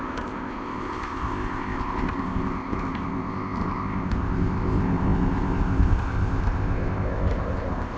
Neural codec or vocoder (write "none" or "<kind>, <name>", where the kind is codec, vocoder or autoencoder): codec, ZipCodec